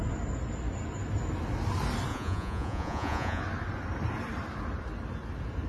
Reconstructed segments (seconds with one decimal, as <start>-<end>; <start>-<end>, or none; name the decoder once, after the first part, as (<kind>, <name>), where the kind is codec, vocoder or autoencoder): 2.1-3.4 (vocoder, Vocos)